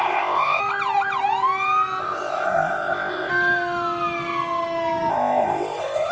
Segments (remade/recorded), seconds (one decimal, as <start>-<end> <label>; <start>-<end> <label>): 0.0-0.6 remade; 0.6-2.0 recorded; 2.0-3.3 remade; 3.3-5.1 recorded; 5.1-6.1 remade